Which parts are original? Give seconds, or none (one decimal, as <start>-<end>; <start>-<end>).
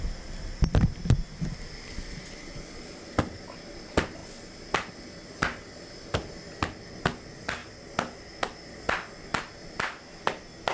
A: 0.0-10.7